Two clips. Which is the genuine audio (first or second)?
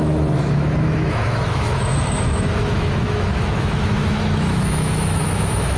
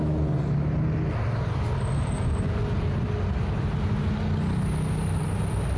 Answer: second